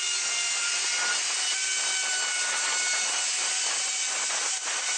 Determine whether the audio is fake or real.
real